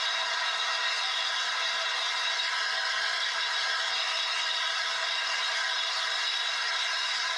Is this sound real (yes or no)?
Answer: yes